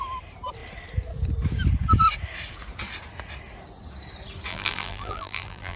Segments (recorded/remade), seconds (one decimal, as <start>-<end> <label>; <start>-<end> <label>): 0.0-4.5 recorded; 4.5-5.8 remade